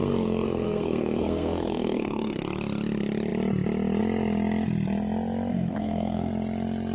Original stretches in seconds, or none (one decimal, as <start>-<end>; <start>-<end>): 2.4-5.5; 6.3-6.9